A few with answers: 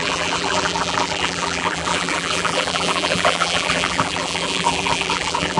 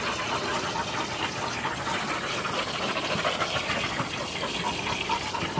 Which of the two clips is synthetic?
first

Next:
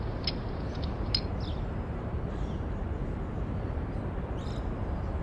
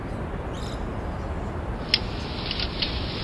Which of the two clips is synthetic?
first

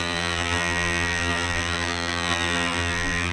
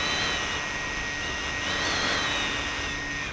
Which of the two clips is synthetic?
first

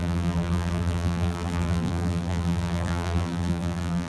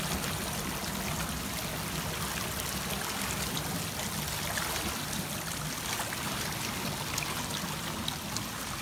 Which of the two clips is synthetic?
first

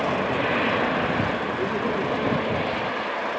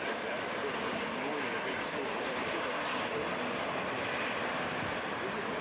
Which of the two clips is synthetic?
second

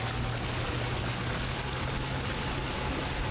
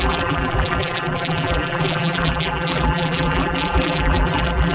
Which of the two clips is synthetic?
second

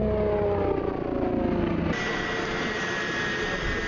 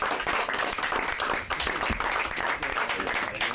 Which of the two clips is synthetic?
second